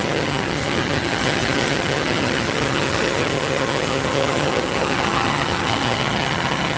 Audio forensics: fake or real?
fake